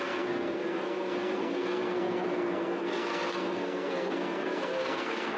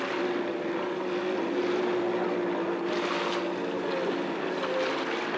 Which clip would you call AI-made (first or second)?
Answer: first